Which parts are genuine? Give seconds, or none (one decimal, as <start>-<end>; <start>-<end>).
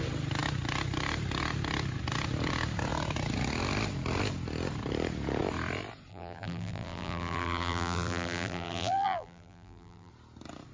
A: 0.0-6.1; 10.1-10.7